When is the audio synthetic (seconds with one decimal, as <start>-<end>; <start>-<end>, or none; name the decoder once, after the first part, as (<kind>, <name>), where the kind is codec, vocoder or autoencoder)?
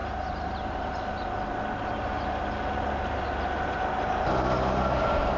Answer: none